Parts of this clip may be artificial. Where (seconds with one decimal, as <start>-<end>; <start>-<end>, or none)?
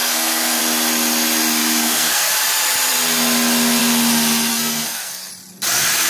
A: 0.0-0.6; 1.6-2.3; 4.5-5.3